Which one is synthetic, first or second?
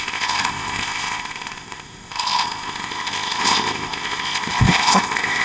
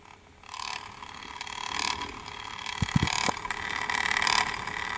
first